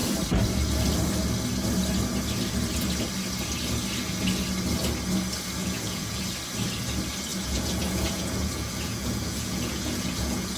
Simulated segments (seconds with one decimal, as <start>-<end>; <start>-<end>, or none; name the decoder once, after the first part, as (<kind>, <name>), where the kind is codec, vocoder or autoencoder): 5.6-6.2 (vocoder, Vocos); 7.3-10.6